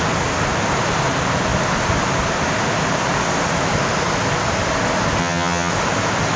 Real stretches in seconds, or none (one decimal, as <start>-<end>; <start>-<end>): 0.0-5.2; 5.7-6.4